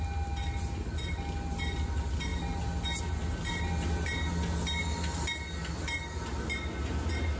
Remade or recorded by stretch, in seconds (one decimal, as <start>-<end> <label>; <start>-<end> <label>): 0.0-7.4 recorded